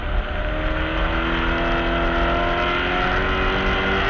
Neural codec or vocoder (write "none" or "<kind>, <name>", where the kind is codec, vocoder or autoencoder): none